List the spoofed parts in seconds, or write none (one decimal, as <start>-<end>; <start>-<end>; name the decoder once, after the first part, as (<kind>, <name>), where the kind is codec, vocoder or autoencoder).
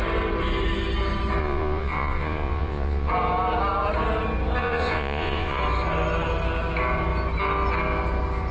1.4-3.1 (vocoder, Vocos); 4.6-5.6